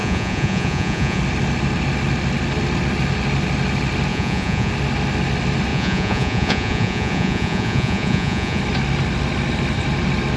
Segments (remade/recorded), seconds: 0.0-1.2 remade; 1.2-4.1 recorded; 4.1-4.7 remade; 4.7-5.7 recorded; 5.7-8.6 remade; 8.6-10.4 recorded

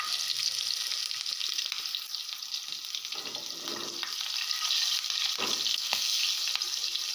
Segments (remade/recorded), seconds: 0.0-5.7 recorded; 5.7-6.2 remade; 6.2-7.1 recorded